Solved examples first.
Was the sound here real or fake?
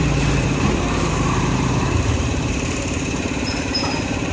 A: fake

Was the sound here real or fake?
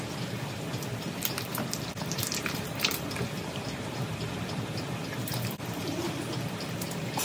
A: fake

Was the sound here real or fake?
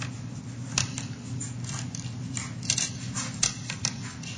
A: real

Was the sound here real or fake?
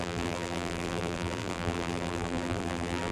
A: fake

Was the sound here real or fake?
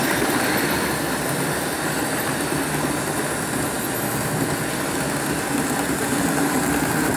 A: real